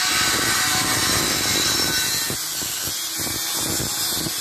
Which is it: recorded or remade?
recorded